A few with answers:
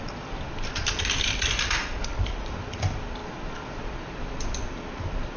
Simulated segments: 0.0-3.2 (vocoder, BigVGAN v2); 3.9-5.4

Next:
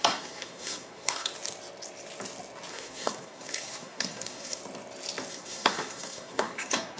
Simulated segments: 0.0-1.3 (codec, SNAC); 2.7-4.6; 5.3-7.0

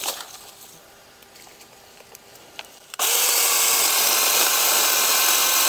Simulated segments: 1.5-4.1 (vocoder, BigVGAN v2)